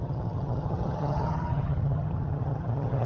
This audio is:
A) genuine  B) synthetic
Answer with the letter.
B